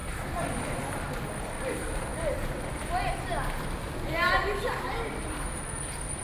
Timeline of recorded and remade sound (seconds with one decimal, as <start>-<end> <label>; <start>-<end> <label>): 0.0-0.8 remade; 0.8-6.2 recorded